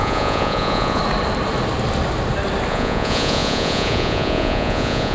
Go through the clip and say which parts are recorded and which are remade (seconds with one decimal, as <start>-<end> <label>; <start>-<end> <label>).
0.0-1.0 remade; 1.0-2.7 recorded; 2.7-5.1 remade